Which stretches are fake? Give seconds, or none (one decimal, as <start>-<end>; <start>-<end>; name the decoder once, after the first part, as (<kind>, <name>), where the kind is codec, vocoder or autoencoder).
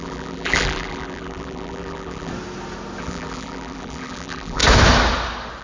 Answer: 0.0-2.3 (vocoder, BigVGAN v2); 3.0-4.6